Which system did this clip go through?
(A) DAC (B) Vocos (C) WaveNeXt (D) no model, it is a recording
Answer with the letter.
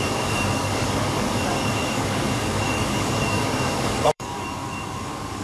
A